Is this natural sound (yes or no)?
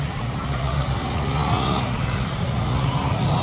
no